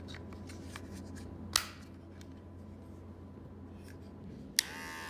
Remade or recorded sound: recorded